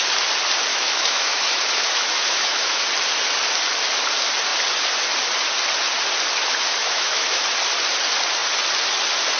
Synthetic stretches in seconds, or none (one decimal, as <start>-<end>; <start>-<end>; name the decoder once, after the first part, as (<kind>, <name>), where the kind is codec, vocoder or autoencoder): 0.7-2.8 (autoencoder, DAC-VAE); 6.8-7.4